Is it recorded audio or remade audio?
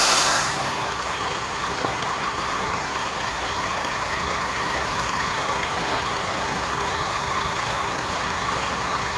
remade